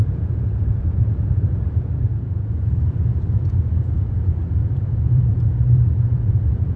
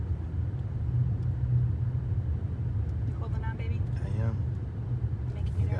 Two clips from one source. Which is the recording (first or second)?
second